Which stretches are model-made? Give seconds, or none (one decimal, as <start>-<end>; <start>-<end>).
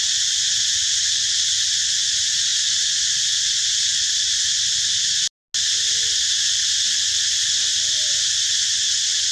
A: none